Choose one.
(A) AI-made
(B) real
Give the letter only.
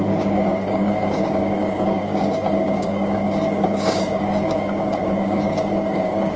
A